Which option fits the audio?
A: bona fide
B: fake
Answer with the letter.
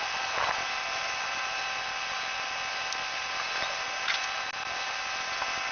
A